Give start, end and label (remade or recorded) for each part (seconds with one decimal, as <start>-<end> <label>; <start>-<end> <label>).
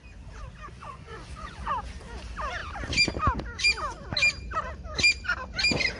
0.0-0.8 recorded; 0.8-1.7 remade; 1.7-6.0 recorded